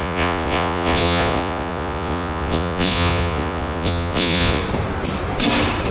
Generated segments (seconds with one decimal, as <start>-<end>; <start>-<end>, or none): 0.0-4.6